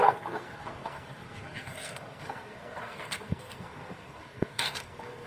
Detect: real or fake fake